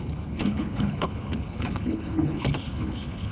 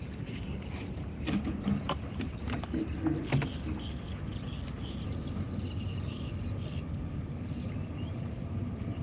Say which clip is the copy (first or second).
first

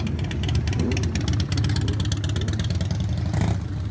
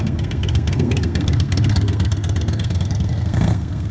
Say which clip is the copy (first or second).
second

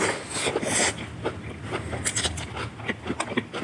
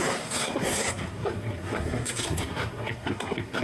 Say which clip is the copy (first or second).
second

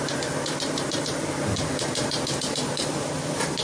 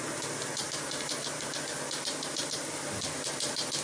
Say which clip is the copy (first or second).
first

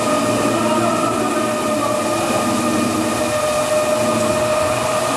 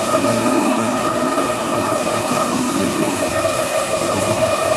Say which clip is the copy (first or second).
second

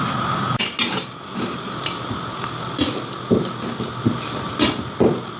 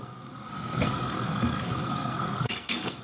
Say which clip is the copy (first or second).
second